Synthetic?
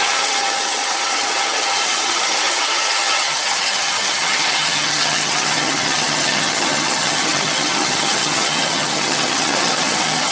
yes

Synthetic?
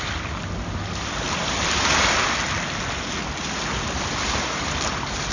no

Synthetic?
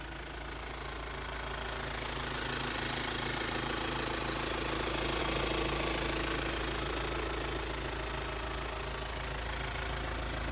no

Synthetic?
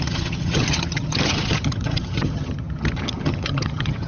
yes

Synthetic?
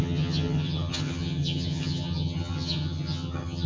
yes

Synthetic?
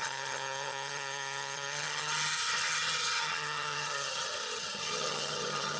yes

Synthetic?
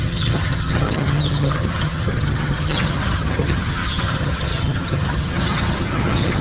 yes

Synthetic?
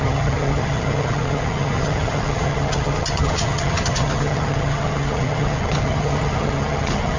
yes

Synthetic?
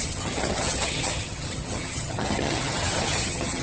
yes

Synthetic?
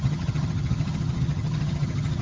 yes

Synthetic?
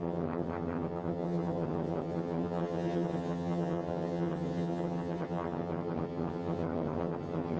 yes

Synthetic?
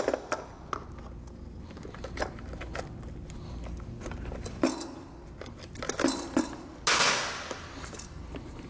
no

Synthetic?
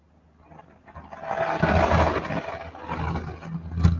no